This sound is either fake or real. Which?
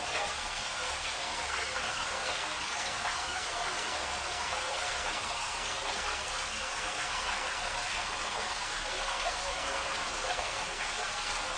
fake